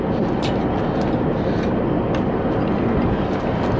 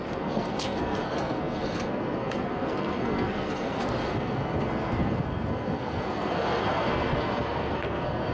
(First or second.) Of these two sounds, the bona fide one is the first